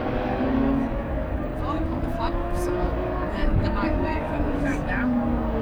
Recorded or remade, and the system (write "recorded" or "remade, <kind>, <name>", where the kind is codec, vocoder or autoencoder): remade, codec, DAC